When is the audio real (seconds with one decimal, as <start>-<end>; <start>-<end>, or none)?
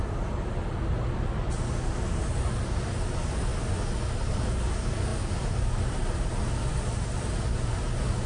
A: 0.0-8.3